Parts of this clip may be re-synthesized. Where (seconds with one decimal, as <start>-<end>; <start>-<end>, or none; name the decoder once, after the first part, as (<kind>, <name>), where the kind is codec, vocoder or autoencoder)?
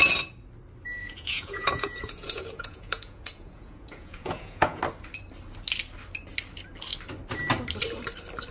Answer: 1.0-4.8 (vocoder, Vocos)